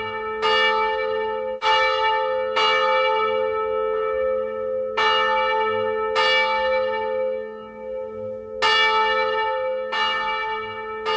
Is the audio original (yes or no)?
yes